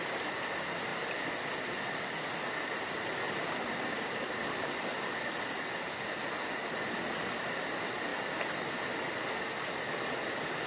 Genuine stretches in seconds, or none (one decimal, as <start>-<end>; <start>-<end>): 0.0-10.7